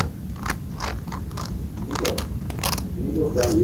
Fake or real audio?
real